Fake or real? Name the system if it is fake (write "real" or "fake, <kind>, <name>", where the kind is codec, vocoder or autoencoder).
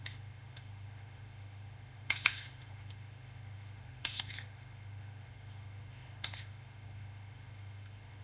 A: fake, autoencoder, DAC-VAE